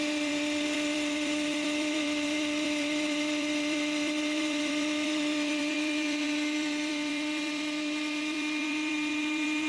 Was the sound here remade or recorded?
remade